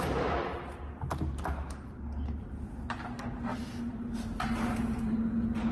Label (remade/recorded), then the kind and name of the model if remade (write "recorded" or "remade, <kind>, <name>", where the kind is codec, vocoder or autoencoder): recorded